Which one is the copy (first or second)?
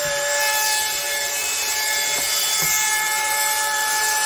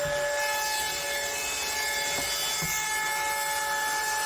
first